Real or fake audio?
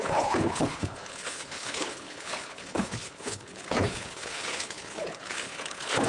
fake